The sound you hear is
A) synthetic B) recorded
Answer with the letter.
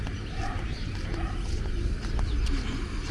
B